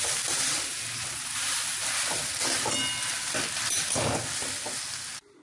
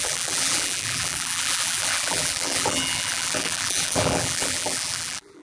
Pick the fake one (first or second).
second